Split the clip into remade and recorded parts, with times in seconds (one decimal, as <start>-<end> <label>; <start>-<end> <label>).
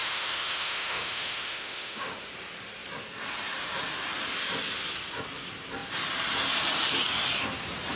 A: 0.0-2.3 remade; 2.3-8.0 recorded